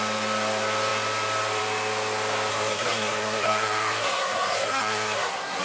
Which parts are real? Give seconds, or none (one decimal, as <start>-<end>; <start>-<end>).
0.0-2.5